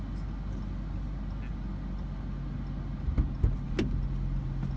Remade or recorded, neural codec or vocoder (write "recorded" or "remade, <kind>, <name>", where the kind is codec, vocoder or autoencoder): recorded